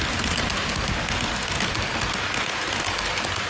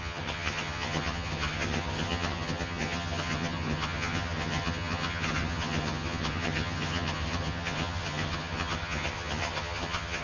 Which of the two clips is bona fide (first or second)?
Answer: first